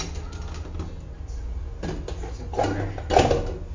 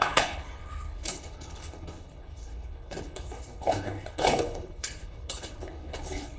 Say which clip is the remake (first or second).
second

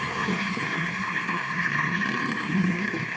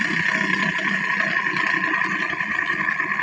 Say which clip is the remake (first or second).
first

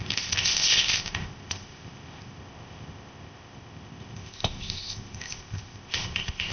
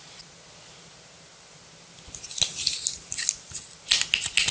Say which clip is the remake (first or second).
first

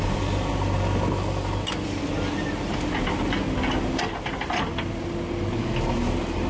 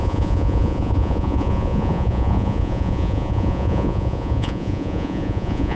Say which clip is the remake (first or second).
second